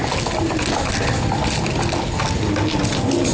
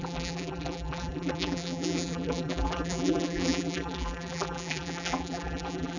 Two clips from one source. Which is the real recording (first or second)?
first